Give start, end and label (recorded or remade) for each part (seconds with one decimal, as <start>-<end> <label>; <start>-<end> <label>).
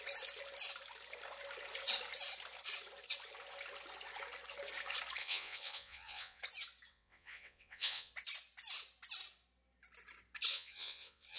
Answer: 0.0-5.2 recorded; 5.2-6.4 remade; 6.4-6.9 recorded; 6.9-8.1 remade; 8.1-10.5 recorded; 10.5-11.4 remade